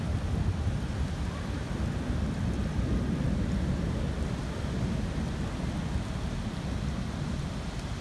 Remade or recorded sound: recorded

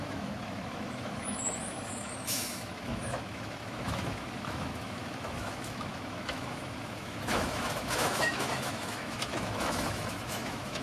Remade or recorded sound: remade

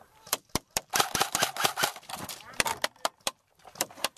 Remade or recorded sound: remade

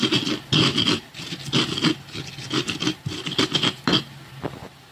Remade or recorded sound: recorded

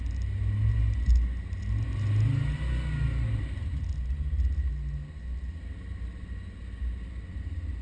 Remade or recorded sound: recorded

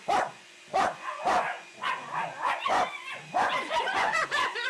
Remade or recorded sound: remade